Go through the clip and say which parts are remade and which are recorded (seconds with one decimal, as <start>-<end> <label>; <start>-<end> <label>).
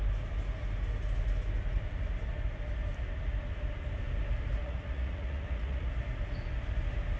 0.0-4.6 recorded; 4.6-5.9 remade; 5.9-7.2 recorded